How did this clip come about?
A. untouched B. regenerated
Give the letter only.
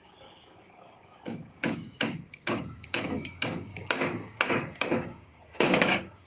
B